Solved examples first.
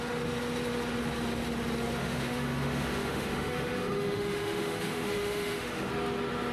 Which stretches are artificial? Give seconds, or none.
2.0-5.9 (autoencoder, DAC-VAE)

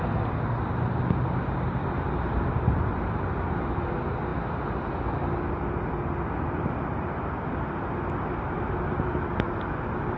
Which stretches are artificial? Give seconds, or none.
none

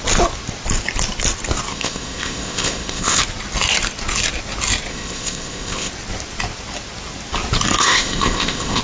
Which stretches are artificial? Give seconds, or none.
1.7-3.2 (codec, ZipCodec); 4.9-5.9; 7.8-8.8

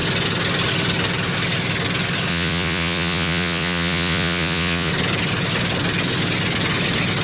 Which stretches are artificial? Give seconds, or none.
2.3-4.9 (vocoder, Vocos)

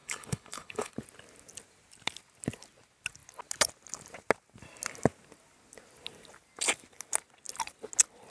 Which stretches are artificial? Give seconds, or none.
0.0-0.9 (codec, HILCodec)

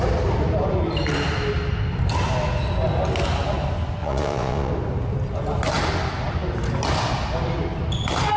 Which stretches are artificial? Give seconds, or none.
4.0-4.7 (vocoder, Vocos)

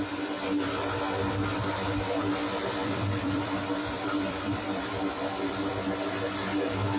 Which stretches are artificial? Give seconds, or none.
2.8-5.8 (vocoder, BigVGAN v2)

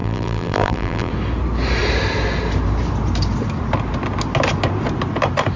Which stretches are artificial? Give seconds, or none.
0.0-1.1 (vocoder, BigVGAN v2)